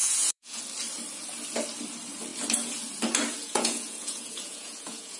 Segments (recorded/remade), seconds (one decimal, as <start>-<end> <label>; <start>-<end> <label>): 0.0-0.6 remade; 0.6-3.4 recorded; 3.4-5.2 remade